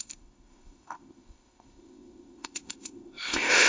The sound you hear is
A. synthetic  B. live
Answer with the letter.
A